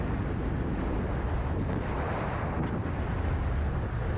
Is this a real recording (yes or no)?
yes